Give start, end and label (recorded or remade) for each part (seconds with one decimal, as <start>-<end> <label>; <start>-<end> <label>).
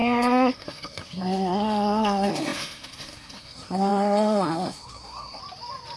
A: 0.0-5.4 remade; 5.4-6.0 recorded